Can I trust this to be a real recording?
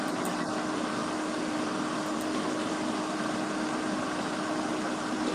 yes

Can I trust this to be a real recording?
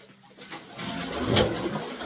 yes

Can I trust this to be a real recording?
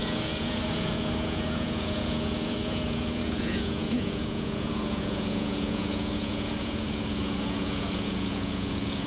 no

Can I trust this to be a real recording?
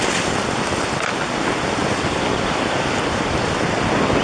yes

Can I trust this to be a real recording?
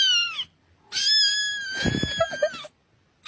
yes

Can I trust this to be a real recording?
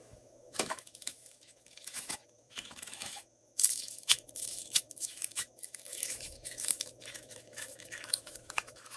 no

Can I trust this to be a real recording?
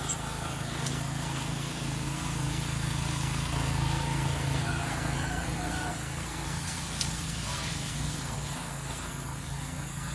no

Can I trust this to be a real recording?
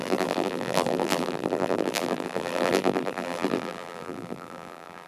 no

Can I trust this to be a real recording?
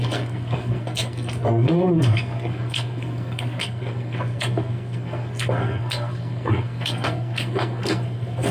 no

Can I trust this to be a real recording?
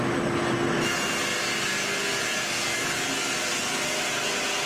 yes